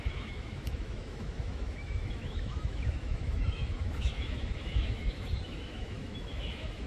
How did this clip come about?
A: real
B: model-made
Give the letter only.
B